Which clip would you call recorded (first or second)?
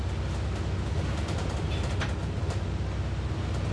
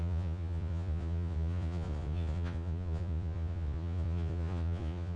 first